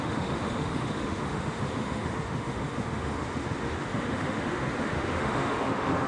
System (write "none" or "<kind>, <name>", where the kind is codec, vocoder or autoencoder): autoencoder, DAC-VAE